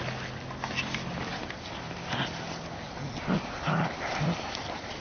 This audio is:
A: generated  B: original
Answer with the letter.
B